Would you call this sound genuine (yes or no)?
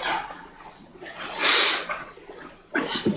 no